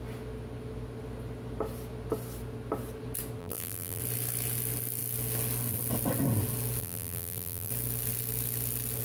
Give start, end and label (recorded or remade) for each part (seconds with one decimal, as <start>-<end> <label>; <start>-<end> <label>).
0.0-3.4 recorded; 3.4-4.0 remade; 4.0-6.8 recorded; 6.8-7.7 remade; 7.7-9.0 recorded